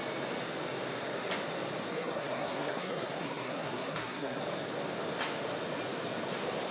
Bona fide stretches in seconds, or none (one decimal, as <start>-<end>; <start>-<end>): 0.0-1.9; 4.4-6.7

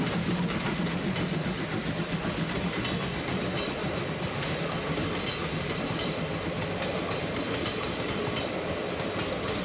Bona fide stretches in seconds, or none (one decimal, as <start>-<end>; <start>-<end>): 0.0-1.4; 1.9-3.8; 8.2-9.6

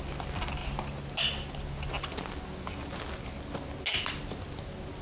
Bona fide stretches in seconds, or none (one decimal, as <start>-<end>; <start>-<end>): 0.0-5.0

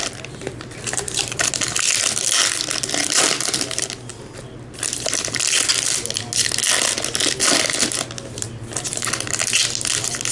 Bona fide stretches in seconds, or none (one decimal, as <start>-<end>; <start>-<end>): 1.5-4.1; 5.5-10.3

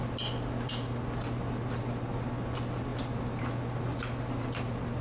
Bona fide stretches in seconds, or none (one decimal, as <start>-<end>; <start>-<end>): 0.0-5.0

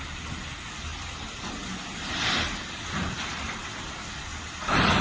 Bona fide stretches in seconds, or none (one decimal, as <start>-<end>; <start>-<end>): 0.0-5.0